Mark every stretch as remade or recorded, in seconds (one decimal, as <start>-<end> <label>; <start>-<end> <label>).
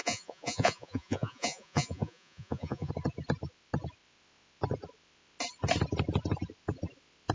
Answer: 0.0-2.9 remade; 2.9-7.3 recorded